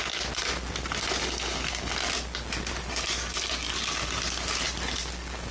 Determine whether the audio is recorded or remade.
recorded